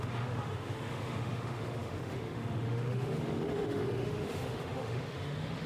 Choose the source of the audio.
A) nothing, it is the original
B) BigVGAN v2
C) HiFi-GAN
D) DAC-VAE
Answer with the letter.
D